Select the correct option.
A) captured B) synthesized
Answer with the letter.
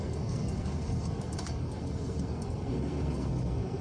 B